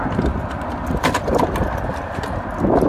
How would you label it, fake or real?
real